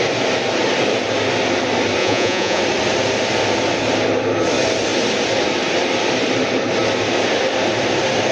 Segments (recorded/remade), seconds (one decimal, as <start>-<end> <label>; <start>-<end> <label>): 0.0-2.0 recorded; 2.0-2.6 remade; 2.6-8.3 recorded